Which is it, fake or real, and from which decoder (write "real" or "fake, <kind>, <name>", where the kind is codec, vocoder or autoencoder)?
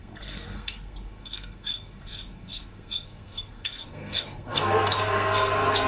fake, codec, SNAC